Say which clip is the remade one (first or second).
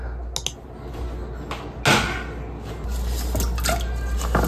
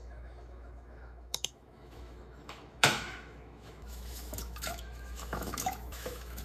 second